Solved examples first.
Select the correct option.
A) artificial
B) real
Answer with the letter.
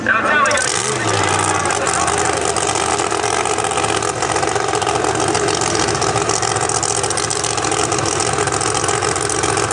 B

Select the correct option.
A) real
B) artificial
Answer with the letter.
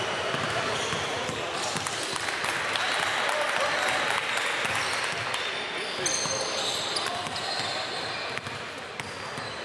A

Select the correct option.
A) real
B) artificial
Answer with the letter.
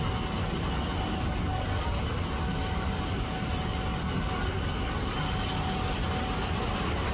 A